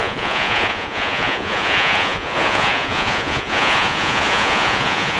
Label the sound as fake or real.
fake